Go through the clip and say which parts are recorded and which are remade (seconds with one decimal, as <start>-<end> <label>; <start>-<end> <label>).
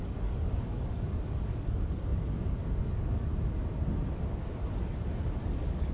0.0-3.3 remade; 3.3-5.4 recorded; 5.4-5.9 remade